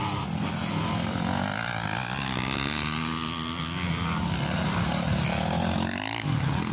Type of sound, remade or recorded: recorded